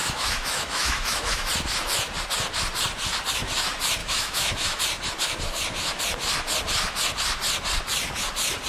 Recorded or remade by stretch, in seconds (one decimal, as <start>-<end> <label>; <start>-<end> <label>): 0.0-1.5 remade; 1.5-4.0 recorded; 4.0-4.8 remade; 4.8-8.7 recorded